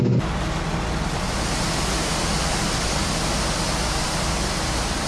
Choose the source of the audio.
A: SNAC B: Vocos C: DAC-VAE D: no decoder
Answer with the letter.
D